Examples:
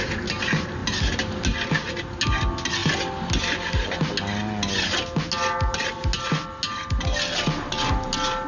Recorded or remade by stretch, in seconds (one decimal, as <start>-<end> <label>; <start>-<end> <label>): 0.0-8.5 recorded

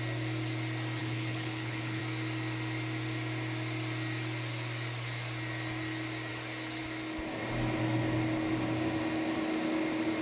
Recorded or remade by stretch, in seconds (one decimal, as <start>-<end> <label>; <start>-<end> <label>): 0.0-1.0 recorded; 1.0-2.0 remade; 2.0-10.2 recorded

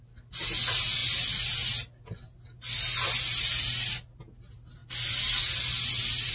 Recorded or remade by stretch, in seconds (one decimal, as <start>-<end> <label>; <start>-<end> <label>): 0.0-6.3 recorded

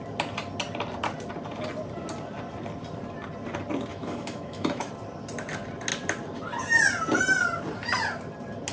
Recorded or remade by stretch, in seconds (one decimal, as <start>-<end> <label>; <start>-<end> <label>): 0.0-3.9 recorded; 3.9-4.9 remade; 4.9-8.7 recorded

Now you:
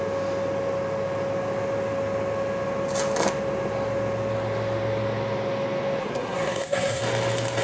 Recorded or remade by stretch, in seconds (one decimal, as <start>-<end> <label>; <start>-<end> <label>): 0.0-6.0 recorded; 6.0-7.0 remade; 7.0-7.6 recorded

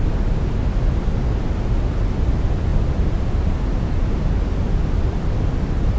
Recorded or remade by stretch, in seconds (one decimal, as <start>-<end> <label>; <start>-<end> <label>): 0.0-6.0 recorded